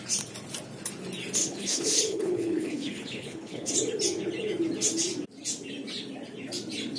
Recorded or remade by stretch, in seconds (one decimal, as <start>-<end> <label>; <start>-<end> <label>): 0.0-1.4 recorded; 1.4-3.7 remade; 3.7-7.0 recorded